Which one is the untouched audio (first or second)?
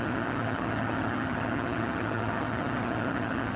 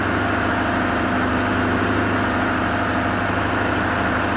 second